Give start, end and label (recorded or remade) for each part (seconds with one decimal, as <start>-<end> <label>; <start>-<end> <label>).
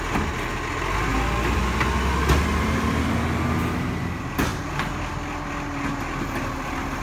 0.0-7.0 recorded